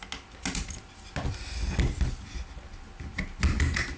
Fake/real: real